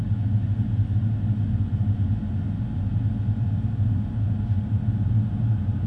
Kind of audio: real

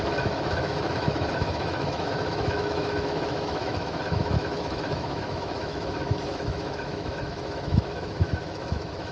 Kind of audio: fake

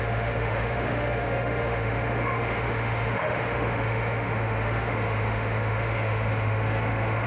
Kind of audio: fake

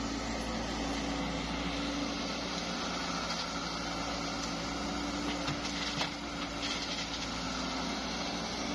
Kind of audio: real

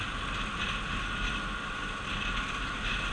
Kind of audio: real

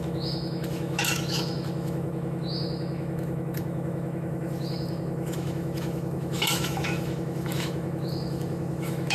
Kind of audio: fake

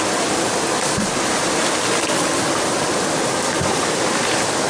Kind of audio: real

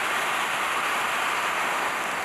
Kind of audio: real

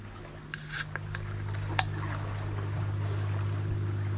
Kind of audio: real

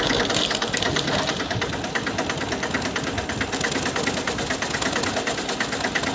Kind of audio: real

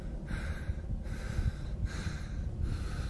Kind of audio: real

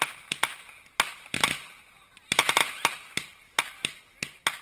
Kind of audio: real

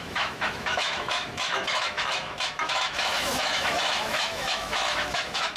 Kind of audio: fake